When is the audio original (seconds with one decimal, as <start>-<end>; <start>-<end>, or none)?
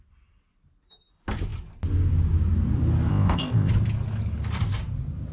0.0-3.1; 3.7-5.3